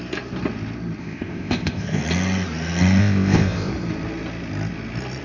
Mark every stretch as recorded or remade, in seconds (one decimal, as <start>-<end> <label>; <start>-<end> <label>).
0.0-1.0 recorded; 1.0-2.0 remade; 2.0-3.0 recorded; 3.0-3.7 remade; 3.7-5.2 recorded